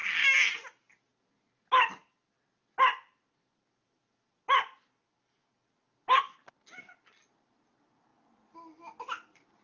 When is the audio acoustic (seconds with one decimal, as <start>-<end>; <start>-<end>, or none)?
0.0-8.1